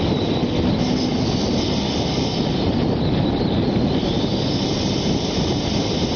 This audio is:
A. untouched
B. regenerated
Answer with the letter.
A